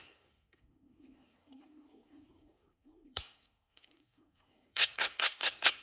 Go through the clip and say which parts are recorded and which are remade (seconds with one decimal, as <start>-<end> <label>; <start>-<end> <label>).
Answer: 0.0-5.8 remade